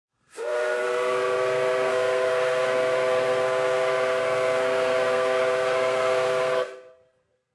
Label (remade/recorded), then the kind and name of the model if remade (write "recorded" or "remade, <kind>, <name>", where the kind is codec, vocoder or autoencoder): remade, codec, SNAC